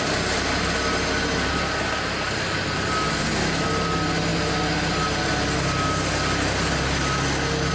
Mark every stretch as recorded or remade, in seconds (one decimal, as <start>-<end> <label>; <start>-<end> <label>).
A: 0.0-7.7 recorded